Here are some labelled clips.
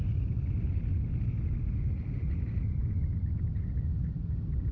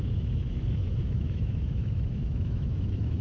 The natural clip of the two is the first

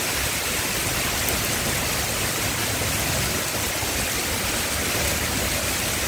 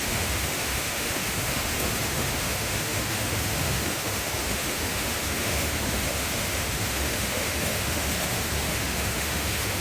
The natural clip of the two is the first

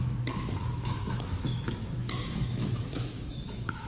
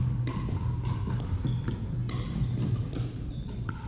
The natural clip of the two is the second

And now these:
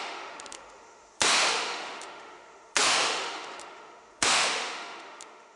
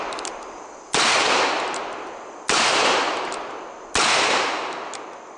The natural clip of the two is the second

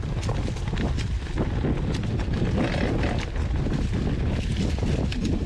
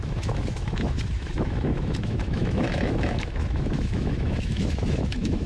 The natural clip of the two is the first